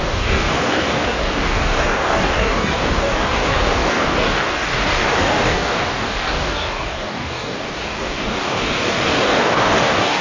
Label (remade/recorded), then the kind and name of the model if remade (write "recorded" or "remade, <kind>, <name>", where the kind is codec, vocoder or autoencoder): remade, codec, DAC